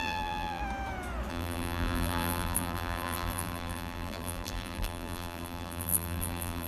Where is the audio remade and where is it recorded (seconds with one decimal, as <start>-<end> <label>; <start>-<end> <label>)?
0.0-0.6 remade; 0.6-1.3 recorded; 1.3-6.7 remade

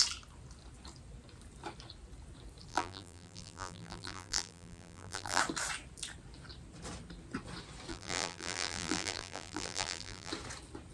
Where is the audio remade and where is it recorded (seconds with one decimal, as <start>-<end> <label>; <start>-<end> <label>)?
0.0-2.7 recorded; 2.7-5.4 remade; 5.4-7.9 recorded; 7.9-10.3 remade; 10.3-10.9 recorded

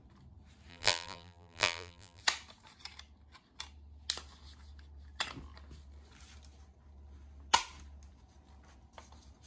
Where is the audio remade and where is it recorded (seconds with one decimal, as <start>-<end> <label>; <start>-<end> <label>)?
0.0-0.7 recorded; 0.7-2.2 remade; 2.2-9.5 recorded

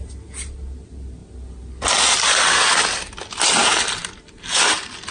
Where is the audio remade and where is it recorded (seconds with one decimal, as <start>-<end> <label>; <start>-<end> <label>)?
0.0-4.0 recorded; 4.0-5.1 remade

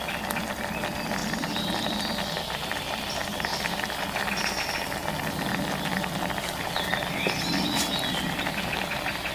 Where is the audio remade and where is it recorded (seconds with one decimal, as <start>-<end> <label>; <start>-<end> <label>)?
0.0-1.2 recorded; 1.2-1.9 remade; 1.9-9.3 recorded